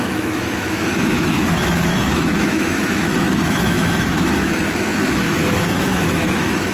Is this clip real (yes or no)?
no